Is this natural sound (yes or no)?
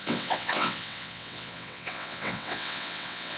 no